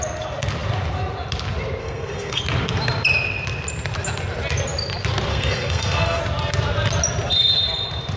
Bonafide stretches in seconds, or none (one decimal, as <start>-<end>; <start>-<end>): 0.0-1.8; 2.4-5.3; 6.2-8.2

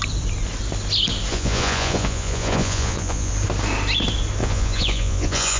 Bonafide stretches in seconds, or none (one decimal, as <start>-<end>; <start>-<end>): 0.0-1.3; 3.3-4.4

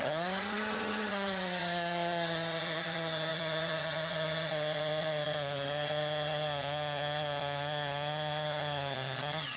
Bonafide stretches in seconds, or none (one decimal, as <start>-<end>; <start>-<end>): none

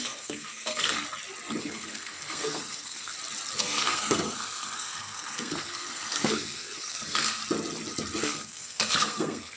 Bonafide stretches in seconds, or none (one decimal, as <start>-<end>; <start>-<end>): 1.0-1.6; 3.1-3.6; 7.4-8.2

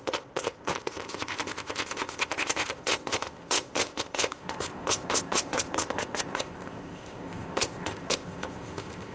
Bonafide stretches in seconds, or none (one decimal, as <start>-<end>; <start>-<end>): none

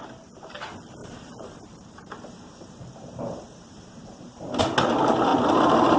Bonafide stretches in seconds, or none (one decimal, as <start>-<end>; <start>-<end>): 0.0-1.0; 4.6-6.0

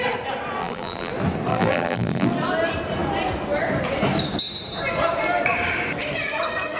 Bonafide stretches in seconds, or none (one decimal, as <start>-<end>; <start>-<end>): 0.0-0.6; 1.1-1.5; 2.3-6.8